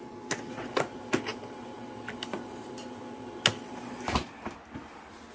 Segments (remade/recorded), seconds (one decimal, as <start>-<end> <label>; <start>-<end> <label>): 0.0-5.3 recorded